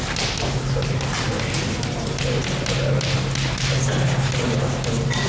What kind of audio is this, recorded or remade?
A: recorded